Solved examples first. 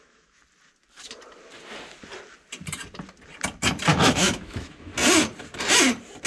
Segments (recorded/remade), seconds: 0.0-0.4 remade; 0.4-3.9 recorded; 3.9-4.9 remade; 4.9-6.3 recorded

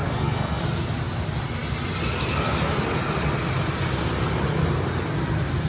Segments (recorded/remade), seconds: 0.0-0.6 remade; 0.6-5.7 recorded

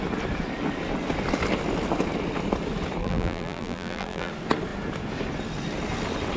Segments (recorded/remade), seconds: 0.0-3.0 recorded; 3.0-4.3 remade; 4.3-6.4 recorded